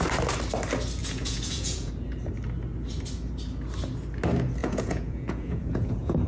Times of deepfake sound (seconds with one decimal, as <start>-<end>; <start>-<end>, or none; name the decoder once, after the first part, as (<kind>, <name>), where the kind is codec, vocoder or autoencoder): 1.0-1.9 (vocoder, Vocos); 4.6-6.3